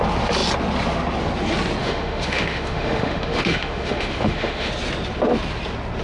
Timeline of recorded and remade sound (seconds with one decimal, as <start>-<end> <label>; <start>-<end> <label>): 0.0-1.8 recorded; 1.8-4.7 remade; 4.7-6.0 recorded